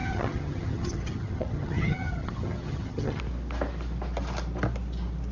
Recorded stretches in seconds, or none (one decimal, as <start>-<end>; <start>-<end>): 3.2-5.3